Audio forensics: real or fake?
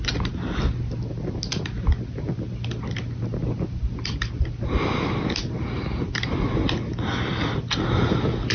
real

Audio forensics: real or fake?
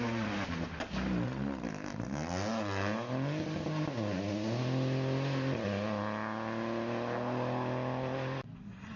real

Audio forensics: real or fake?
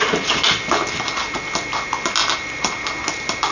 real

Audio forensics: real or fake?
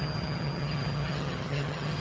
fake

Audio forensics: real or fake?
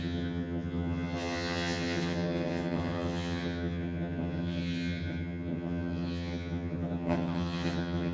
fake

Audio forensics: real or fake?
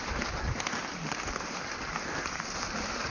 real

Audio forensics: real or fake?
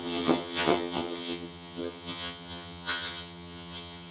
fake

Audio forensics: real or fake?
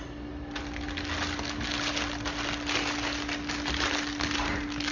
real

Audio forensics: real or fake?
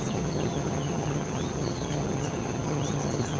fake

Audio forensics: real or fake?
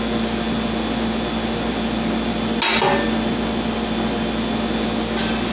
real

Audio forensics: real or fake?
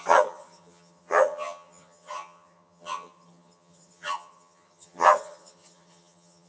fake